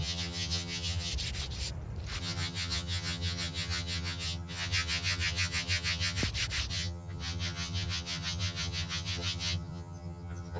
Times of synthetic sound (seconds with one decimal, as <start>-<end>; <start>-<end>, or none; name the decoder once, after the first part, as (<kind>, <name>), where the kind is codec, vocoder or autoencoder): 0.0-1.1 (vocoder, HiFi-GAN); 2.2-6.2; 6.7-10.6

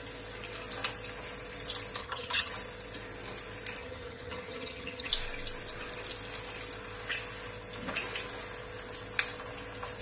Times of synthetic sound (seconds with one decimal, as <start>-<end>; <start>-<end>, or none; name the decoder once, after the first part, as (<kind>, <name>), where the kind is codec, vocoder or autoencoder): 2.0-2.5 (vocoder, HiFi-GAN); 3.8-5.1